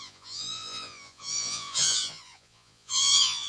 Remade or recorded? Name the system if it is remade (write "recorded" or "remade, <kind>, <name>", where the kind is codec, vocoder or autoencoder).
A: remade, vocoder, Vocos